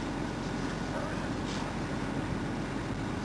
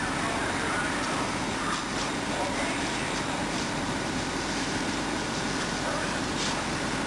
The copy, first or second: second